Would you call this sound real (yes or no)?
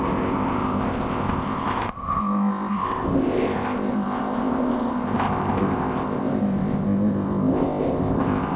no